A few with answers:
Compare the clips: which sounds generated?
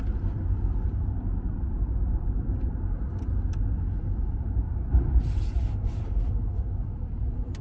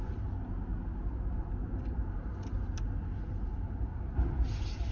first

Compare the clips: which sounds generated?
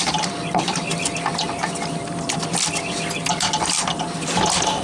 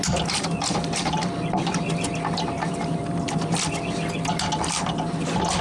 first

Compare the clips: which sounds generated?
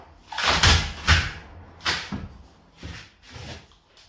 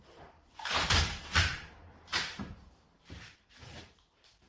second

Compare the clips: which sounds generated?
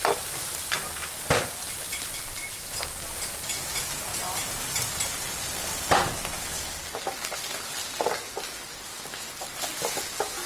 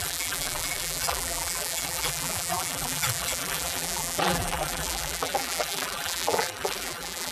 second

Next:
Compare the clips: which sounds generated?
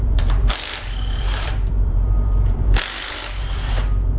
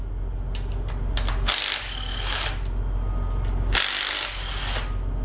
first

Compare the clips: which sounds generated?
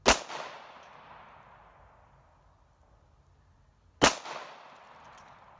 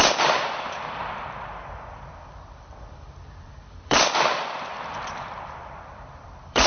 second